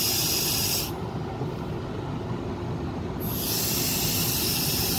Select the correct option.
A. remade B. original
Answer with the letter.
B